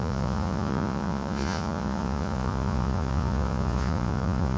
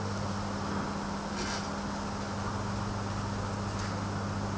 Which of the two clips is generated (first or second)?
first